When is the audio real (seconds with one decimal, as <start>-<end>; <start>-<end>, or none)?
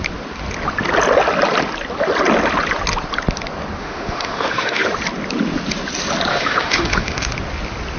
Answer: 0.0-3.8; 4.9-6.3; 7.3-8.0